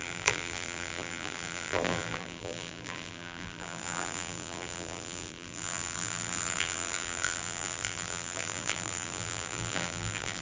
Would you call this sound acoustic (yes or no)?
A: no